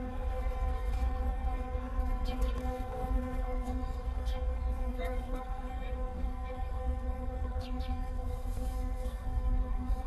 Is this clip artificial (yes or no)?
yes